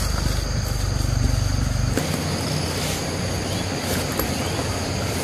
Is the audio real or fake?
real